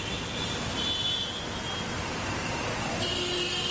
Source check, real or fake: real